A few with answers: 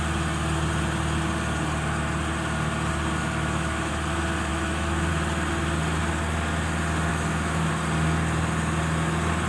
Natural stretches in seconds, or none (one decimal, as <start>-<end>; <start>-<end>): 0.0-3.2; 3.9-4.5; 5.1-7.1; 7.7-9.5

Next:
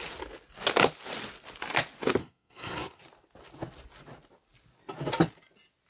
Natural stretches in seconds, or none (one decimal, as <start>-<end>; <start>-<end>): 0.0-2.2; 3.0-5.9

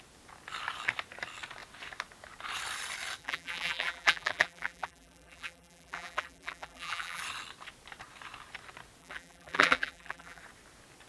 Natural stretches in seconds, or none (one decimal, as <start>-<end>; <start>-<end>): 0.0-3.2; 7.2-9.0; 10.4-11.1

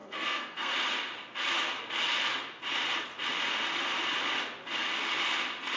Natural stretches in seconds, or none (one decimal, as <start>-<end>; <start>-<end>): 0.7-5.8